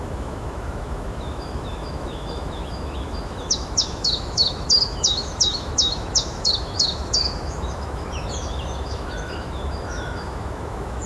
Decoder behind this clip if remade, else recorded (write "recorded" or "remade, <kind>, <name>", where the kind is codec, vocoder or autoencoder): remade, autoencoder, DAC-VAE